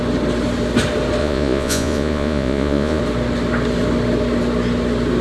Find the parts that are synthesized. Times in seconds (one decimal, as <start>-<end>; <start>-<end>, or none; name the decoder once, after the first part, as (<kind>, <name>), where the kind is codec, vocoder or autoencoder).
1.2-3.0 (vocoder, Vocos)